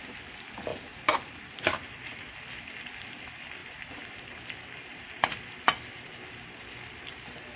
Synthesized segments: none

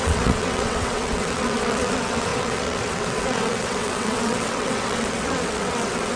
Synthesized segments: 0.0-6.2 (vocoder, WaveNeXt)